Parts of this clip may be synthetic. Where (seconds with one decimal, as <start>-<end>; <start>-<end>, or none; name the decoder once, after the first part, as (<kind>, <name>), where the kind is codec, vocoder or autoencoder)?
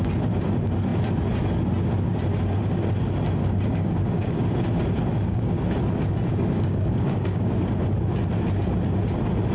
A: 3.4-4.5 (codec, DAC); 5.1-5.6; 6.3-7.5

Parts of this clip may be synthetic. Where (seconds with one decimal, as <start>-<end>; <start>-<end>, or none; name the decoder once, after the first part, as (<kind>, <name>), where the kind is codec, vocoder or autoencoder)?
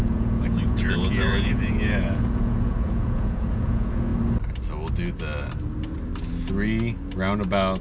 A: 0.0-4.1 (vocoder, Vocos)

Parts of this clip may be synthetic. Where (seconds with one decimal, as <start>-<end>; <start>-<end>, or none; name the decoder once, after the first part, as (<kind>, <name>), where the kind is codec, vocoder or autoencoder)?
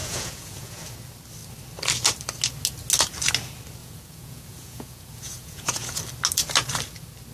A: 0.0-0.8 (vocoder, Vocos); 3.8-6.0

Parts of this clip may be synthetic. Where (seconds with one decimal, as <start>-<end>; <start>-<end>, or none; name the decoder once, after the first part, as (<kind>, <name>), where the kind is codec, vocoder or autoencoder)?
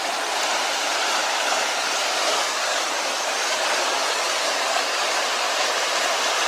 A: 1.2-5.1 (codec, DAC)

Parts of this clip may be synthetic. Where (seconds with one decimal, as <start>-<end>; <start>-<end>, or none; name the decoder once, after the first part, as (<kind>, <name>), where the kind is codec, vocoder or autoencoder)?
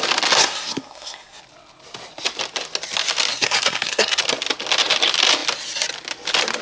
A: 0.4-1.4 (codec, SNAC); 3.3-4.2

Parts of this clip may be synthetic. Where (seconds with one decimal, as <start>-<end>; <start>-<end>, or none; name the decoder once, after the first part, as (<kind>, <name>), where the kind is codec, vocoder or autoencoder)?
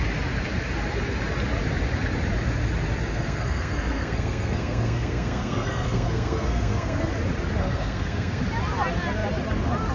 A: 3.1-7.1 (codec, SNAC); 7.6-8.4